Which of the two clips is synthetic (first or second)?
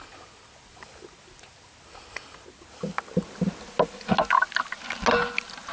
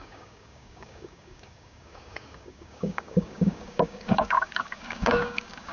second